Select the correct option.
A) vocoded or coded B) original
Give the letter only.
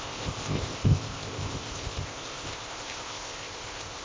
A